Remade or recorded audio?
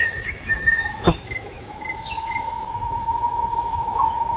remade